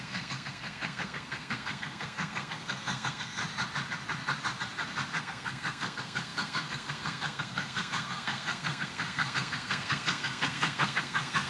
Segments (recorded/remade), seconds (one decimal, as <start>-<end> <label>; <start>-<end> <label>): 0.0-3.4 remade; 3.4-5.2 recorded; 5.2-11.5 remade